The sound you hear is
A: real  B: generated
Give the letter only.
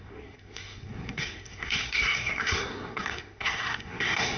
B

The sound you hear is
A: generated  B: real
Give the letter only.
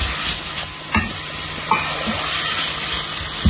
B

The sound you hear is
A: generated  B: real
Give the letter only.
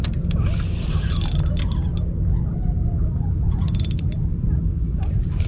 B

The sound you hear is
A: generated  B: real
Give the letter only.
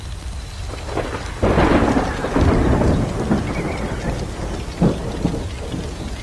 B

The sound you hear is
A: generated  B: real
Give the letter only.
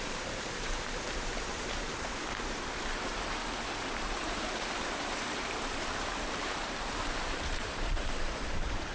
A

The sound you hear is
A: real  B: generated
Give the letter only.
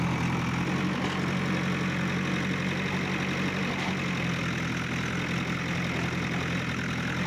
A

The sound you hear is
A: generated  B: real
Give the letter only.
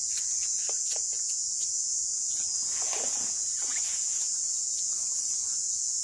A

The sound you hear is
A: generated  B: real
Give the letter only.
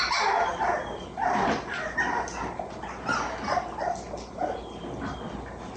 B